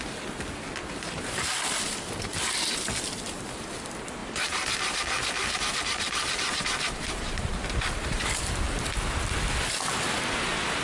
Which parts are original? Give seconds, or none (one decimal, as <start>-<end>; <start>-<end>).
0.0-4.2; 8.3-10.8